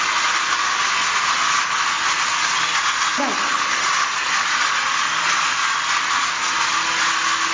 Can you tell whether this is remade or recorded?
recorded